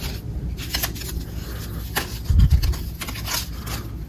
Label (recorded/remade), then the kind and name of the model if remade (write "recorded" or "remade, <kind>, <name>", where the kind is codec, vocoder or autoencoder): recorded